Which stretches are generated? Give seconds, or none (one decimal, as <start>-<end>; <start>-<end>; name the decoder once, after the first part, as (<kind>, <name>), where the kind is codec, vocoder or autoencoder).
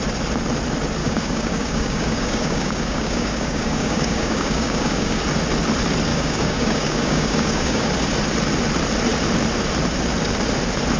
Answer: 1.0-5.2 (codec, DAC); 6.1-7.9